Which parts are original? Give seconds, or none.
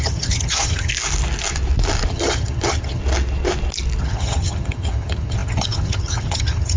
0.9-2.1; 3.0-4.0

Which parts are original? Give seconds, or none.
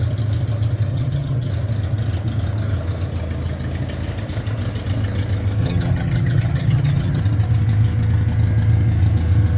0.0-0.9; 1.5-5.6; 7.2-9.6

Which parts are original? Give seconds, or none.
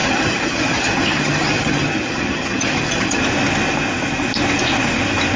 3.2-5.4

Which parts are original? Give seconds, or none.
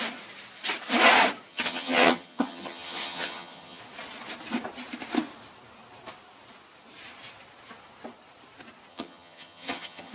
0.0-1.5; 3.8-8.9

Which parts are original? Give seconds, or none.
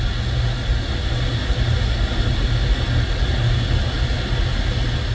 0.0-5.1